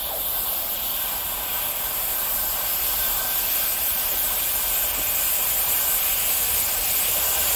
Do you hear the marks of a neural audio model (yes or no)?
no